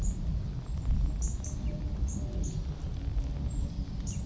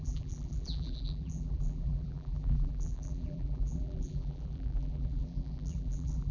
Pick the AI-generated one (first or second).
second